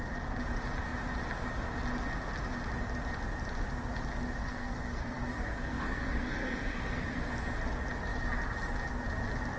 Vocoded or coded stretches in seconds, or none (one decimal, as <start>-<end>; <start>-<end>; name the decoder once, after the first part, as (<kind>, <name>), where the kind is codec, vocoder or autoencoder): 4.4-7.3 (codec, SNAC)